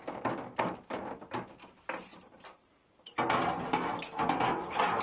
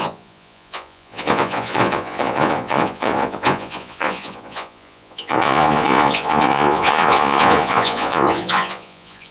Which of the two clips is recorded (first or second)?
first